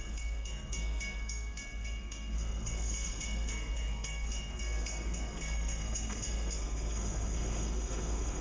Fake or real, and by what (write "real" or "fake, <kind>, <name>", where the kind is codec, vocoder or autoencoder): fake, codec, SNAC